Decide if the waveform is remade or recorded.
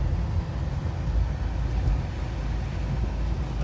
recorded